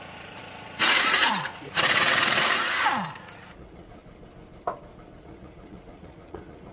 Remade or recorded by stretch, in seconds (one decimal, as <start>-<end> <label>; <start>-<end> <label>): 0.0-4.0 remade; 4.0-5.2 recorded; 5.2-6.7 remade